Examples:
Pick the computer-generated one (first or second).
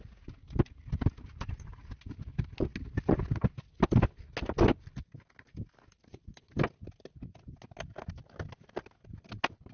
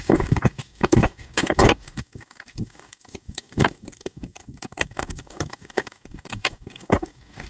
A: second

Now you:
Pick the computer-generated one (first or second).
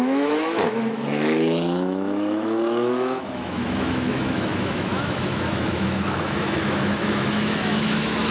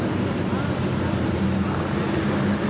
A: first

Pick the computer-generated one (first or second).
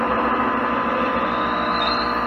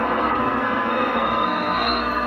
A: second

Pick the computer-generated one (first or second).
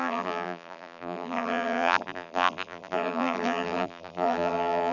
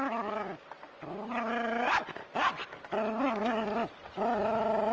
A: first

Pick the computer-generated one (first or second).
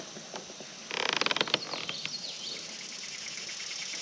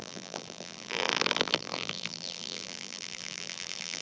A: second